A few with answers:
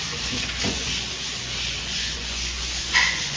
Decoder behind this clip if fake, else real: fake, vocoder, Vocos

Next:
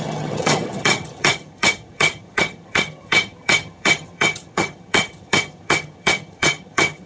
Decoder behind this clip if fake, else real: fake, vocoder, HiFi-GAN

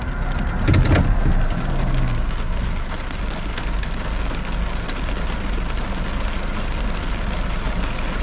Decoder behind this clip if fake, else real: real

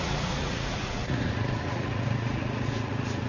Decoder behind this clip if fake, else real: fake, vocoder, Vocos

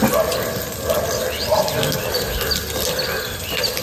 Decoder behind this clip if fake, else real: real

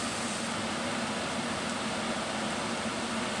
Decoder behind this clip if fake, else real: real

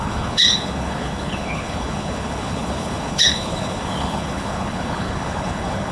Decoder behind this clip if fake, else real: fake, codec, HILCodec